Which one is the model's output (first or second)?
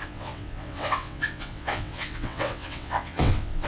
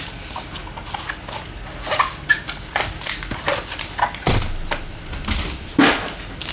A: first